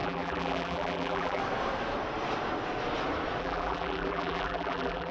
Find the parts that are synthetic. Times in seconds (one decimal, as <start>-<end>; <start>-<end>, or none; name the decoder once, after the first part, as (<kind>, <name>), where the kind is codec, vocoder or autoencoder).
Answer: 0.0-1.4 (vocoder, BigVGAN v2); 3.4-5.1